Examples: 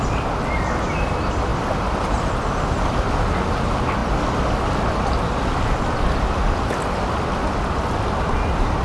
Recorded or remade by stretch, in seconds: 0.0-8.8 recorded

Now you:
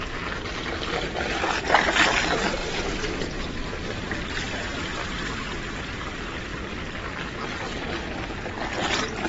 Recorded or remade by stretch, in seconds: 0.0-2.6 recorded; 2.6-3.7 remade; 3.7-9.3 recorded